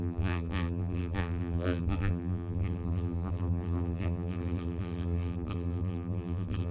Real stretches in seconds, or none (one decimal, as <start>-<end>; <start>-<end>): none